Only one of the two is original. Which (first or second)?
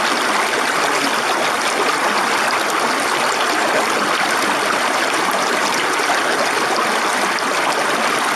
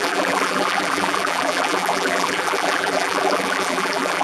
first